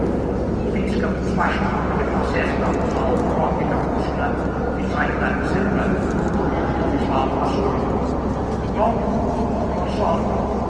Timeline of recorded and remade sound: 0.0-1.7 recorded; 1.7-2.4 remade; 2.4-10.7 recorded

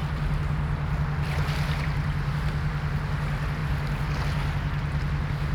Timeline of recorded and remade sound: 0.0-5.5 recorded

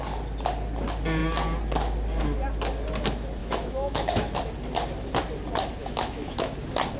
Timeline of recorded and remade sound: 0.0-3.4 recorded; 3.4-4.4 remade; 4.4-5.8 recorded; 5.8-6.5 remade; 6.5-7.0 recorded

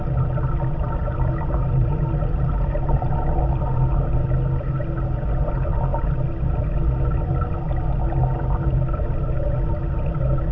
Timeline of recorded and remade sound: 0.0-1.0 recorded; 1.0-3.4 remade; 3.4-10.5 recorded

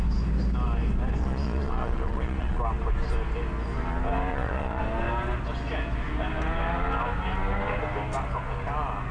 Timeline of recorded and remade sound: 0.0-1.2 recorded; 1.2-2.6 remade; 2.6-4.3 recorded; 4.3-4.8 remade; 4.8-9.1 recorded

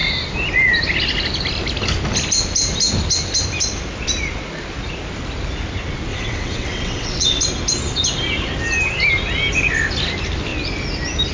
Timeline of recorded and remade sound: 0.0-6.1 recorded; 6.1-7.4 remade; 7.4-11.3 recorded

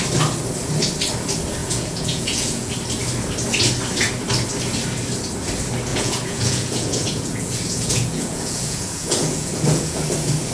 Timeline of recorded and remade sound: 0.0-1.6 recorded; 1.6-2.7 remade; 2.7-5.9 recorded; 5.9-10.0 remade; 10.0-10.5 recorded